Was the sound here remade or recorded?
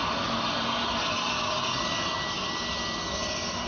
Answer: recorded